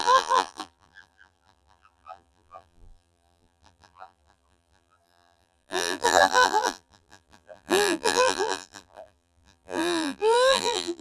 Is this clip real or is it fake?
fake